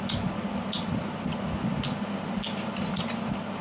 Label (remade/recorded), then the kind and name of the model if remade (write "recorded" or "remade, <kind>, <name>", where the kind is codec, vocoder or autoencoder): recorded